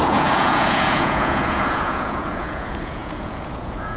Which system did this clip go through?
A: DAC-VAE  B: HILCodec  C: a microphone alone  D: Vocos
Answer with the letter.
D